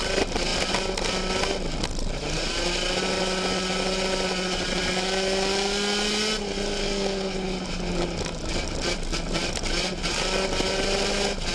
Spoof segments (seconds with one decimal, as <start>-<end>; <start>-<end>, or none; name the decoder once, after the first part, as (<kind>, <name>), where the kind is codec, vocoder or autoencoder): none